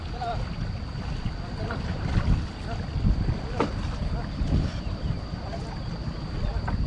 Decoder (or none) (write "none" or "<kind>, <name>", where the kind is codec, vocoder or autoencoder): none